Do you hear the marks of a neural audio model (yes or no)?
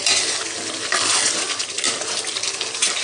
no